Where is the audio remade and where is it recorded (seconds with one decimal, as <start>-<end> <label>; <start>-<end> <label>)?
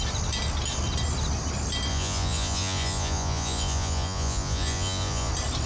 0.0-1.9 recorded; 1.9-5.3 remade; 5.3-5.7 recorded